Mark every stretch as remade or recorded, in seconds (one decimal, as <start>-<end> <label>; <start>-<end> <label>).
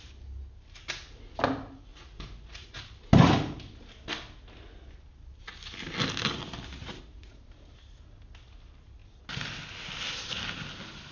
0.0-1.9 recorded; 1.9-2.8 remade; 2.8-6.8 recorded; 6.8-7.4 remade; 7.4-11.1 recorded